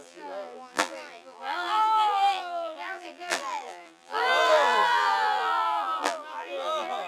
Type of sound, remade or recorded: remade